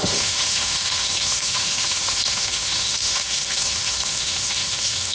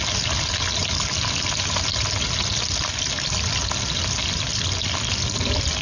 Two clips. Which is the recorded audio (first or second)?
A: second